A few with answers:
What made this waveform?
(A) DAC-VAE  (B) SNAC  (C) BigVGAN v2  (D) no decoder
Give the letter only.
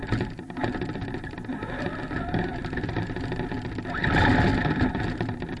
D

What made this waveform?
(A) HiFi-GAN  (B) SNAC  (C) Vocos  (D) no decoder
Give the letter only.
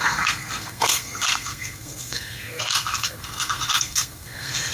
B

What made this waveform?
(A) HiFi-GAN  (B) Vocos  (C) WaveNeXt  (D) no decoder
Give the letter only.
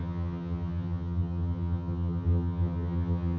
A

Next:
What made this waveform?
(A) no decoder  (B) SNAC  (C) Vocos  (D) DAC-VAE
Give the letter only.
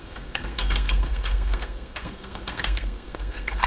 B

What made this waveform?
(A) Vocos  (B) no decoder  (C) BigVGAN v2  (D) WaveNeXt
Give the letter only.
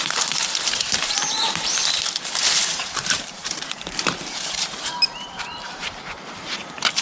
C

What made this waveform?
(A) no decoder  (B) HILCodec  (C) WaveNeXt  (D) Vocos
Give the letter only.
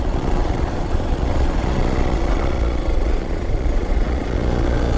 D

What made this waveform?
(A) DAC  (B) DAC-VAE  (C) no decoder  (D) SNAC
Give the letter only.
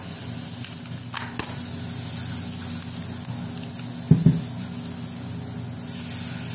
C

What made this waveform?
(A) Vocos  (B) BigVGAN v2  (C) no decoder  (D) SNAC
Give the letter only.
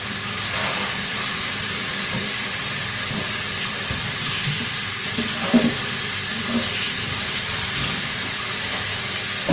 B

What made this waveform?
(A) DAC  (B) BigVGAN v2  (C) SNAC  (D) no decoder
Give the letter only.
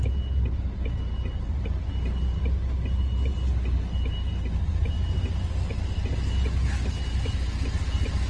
D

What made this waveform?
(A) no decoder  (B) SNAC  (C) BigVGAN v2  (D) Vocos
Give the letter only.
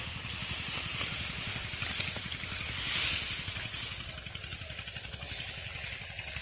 A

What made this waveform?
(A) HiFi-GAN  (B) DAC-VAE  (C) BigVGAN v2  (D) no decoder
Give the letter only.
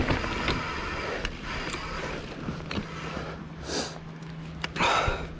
D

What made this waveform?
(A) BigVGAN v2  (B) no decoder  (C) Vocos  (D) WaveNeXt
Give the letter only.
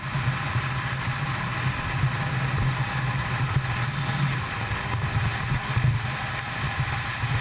B